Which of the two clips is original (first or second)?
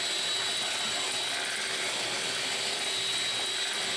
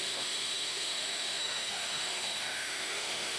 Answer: first